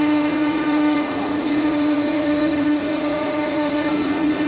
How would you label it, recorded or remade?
remade